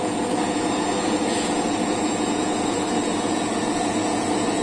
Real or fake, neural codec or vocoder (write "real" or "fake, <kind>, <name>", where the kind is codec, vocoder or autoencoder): fake, vocoder, Vocos